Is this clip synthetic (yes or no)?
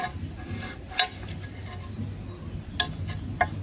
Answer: no